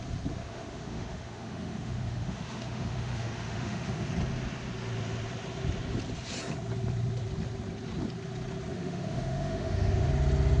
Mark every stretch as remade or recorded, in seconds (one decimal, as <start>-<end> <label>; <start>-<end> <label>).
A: 0.0-0.4 recorded; 0.4-4.1 remade; 4.1-8.7 recorded; 8.7-10.1 remade; 10.1-10.6 recorded